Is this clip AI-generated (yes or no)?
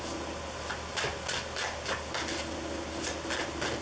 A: no